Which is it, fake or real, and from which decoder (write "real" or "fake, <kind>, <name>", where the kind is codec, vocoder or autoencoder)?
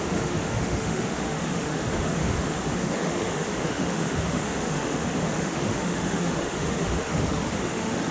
fake, autoencoder, DAC-VAE